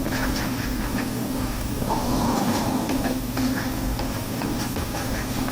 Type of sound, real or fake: fake